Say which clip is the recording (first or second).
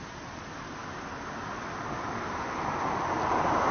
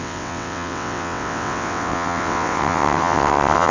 first